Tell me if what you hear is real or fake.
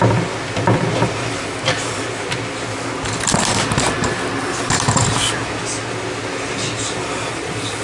real